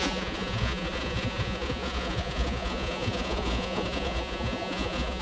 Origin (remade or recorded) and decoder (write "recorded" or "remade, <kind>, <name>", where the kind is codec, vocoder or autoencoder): remade, vocoder, Vocos